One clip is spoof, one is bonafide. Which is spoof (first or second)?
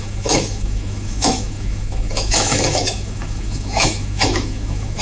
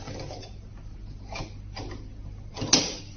first